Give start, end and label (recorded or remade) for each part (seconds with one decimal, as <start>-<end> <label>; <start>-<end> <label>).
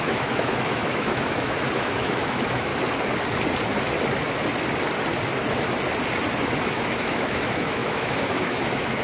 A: 0.0-2.7 remade; 2.7-6.6 recorded; 6.6-9.0 remade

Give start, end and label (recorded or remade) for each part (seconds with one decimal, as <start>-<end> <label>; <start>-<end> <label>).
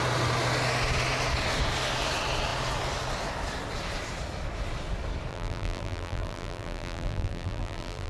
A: 0.0-5.3 recorded; 5.3-8.1 remade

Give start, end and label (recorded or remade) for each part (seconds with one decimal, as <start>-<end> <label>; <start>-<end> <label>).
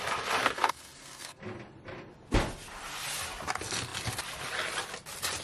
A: 0.0-0.4 recorded; 0.4-1.4 remade; 1.4-5.4 recorded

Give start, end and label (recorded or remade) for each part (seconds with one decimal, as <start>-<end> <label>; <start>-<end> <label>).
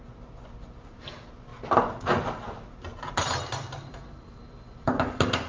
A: 0.0-3.9 recorded; 3.9-4.4 remade; 4.4-5.5 recorded